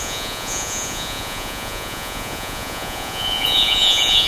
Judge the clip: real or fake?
fake